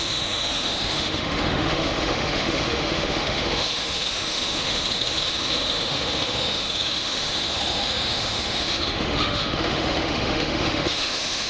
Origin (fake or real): fake